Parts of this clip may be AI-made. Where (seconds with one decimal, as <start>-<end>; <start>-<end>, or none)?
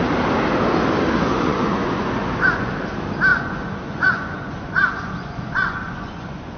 1.3-2.7; 3.3-6.6